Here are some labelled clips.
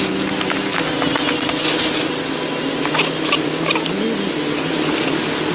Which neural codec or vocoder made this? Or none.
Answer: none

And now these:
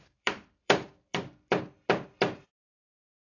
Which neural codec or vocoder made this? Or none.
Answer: vocoder, BigVGAN v2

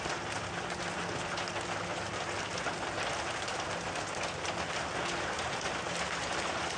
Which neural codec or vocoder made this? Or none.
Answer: none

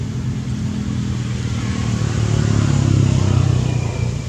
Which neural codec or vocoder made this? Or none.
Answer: none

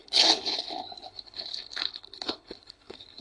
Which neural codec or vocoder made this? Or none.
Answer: codec, HILCodec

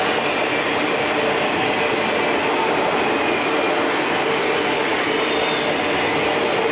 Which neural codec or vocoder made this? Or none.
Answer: none